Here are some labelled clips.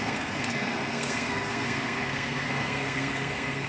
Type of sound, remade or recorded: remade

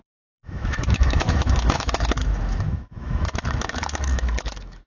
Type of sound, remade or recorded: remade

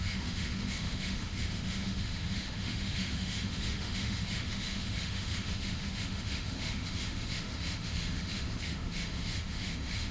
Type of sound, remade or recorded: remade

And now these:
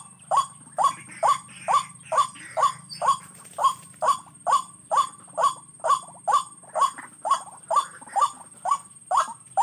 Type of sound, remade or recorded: recorded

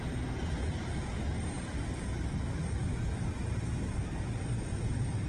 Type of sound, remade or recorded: recorded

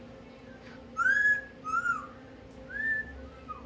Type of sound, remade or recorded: recorded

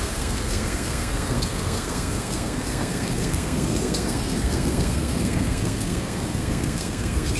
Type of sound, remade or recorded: remade